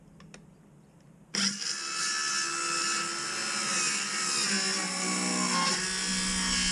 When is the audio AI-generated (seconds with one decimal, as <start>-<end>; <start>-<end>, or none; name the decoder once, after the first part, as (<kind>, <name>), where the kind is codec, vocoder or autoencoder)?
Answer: none

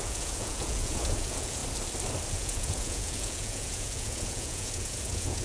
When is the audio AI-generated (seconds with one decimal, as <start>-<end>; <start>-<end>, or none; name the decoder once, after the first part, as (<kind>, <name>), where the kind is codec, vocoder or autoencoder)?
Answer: 0.0-1.6 (vocoder, Vocos); 2.3-5.4

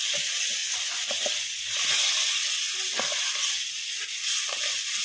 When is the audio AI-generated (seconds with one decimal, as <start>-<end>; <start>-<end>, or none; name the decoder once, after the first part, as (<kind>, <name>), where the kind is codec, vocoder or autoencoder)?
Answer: none